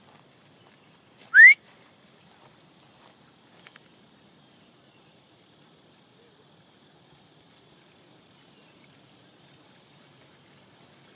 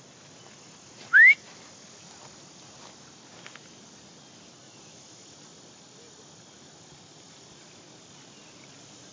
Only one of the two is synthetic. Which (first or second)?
first